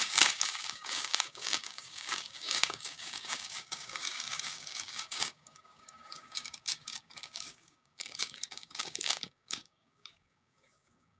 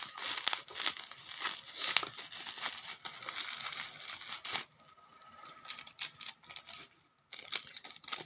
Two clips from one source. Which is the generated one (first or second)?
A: first